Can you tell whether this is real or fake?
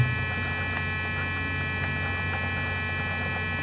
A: real